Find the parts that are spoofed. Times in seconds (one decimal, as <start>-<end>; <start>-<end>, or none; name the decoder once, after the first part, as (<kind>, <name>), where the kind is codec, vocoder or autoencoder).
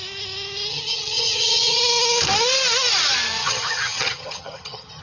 0.7-1.8 (vocoder, HiFi-GAN); 3.4-5.0